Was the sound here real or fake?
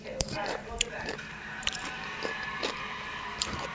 fake